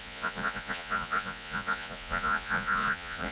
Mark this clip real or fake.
fake